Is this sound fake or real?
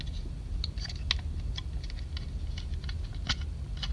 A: real